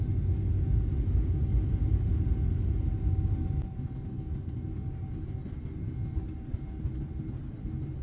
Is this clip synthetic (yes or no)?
no